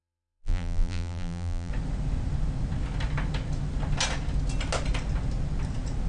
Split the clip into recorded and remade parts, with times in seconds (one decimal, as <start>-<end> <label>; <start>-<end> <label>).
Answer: 0.0-1.7 remade; 1.7-6.1 recorded